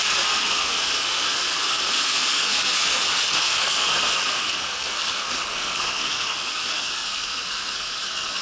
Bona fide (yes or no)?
no